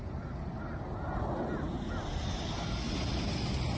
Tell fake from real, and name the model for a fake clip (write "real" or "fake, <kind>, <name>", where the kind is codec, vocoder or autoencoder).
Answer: real